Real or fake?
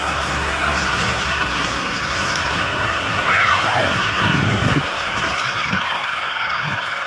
fake